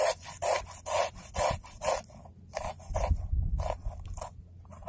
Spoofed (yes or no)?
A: no